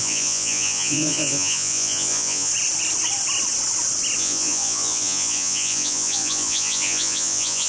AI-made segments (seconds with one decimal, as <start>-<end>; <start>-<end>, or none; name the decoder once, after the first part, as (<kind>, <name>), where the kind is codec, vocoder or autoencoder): 0.0-2.5 (vocoder, Vocos); 4.2-7.7